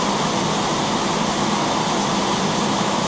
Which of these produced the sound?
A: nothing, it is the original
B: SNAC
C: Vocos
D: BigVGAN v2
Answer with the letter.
A